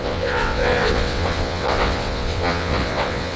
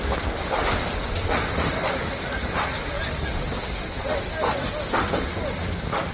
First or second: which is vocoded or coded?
first